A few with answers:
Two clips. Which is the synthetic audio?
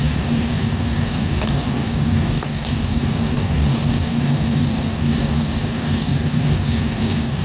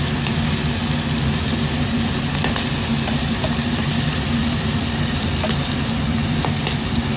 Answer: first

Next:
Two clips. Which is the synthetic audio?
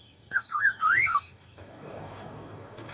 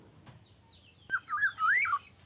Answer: first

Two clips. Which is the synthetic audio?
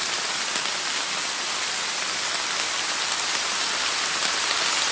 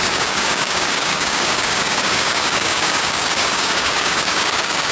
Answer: second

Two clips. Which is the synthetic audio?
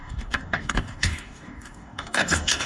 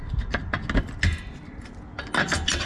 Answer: first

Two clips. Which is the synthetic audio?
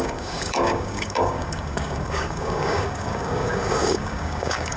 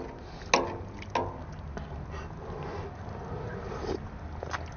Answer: first